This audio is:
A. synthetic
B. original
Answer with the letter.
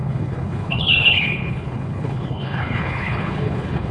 A